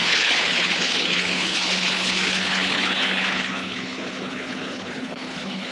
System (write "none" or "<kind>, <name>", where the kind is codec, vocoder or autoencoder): codec, HILCodec